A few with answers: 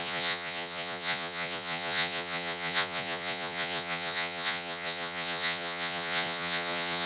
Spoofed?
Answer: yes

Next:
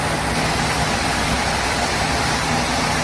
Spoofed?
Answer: no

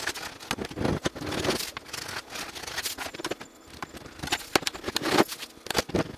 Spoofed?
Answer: no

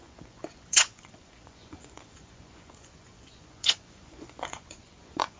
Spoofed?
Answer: yes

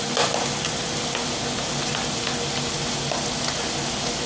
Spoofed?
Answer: no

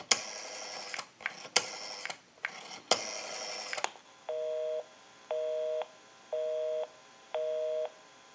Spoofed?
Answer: no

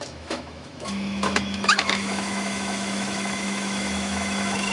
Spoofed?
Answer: yes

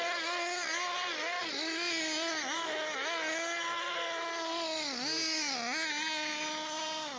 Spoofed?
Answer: no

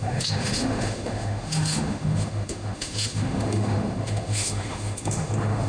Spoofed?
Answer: yes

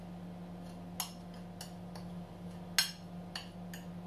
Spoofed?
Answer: no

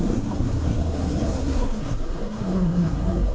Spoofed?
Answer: yes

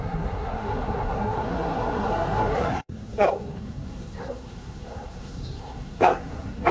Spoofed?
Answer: yes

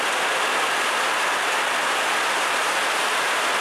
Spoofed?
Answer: no